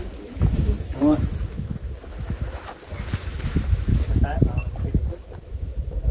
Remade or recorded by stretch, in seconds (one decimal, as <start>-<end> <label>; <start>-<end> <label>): 0.0-2.7 remade; 2.7-3.2 recorded; 3.2-3.9 remade; 3.9-5.1 recorded; 5.1-6.1 remade